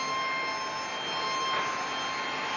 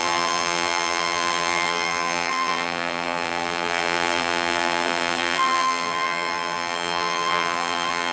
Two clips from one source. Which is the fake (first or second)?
second